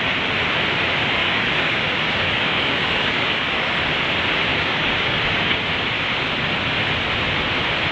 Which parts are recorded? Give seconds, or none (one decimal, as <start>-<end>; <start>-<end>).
0.0-1.2; 3.8-4.5; 5.6-7.9